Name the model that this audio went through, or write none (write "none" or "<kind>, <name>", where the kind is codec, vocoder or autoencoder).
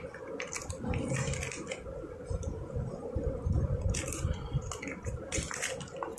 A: none